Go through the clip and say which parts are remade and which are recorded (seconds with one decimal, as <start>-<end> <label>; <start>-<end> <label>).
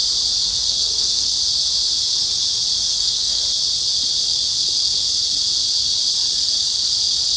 0.0-0.5 recorded; 0.5-1.3 remade; 1.3-2.9 recorded; 2.9-3.4 remade; 3.4-7.4 recorded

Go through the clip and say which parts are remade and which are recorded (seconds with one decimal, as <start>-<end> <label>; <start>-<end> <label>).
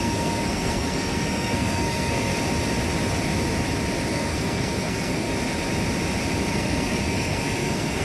0.0-2.3 remade; 2.3-4.1 recorded; 4.1-5.3 remade; 5.3-6.5 recorded; 6.5-8.0 remade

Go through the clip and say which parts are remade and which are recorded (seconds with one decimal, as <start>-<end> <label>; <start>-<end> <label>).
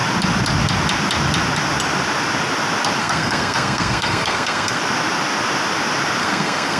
0.0-3.0 recorded; 3.0-4.8 remade; 4.8-6.2 recorded; 6.2-6.8 remade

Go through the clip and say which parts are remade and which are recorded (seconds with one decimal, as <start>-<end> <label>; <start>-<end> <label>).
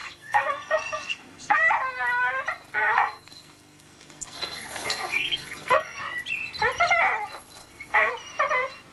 0.0-1.6 remade; 1.6-2.7 recorded; 2.7-6.0 remade; 6.0-7.6 recorded; 7.6-8.1 remade; 8.1-8.9 recorded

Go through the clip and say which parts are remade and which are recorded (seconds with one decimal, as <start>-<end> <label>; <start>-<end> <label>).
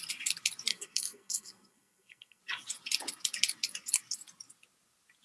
0.0-0.7 recorded; 0.7-2.4 remade; 2.4-5.2 recorded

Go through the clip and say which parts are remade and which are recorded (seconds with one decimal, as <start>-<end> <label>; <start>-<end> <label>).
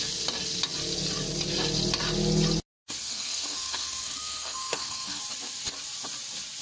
0.0-3.0 recorded; 3.0-5.2 remade; 5.2-6.6 recorded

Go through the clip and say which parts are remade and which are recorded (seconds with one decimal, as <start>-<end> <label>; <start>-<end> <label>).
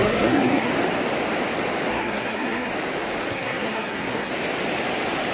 0.0-0.7 remade; 0.7-1.9 recorded; 1.9-2.7 remade; 2.7-3.3 recorded; 3.3-4.3 remade; 4.3-5.3 recorded